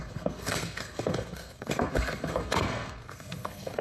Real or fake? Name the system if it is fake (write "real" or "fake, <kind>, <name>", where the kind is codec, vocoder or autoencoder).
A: fake, codec, SNAC